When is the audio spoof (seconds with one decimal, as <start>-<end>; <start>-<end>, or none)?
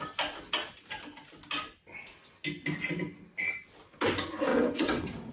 4.5-5.3